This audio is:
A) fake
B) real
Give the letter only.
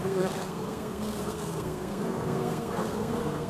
A